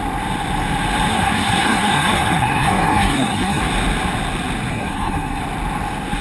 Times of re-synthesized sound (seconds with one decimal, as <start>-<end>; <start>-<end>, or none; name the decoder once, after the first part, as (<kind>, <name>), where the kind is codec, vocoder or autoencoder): 1.1-3.6 (codec, SNAC); 4.7-5.4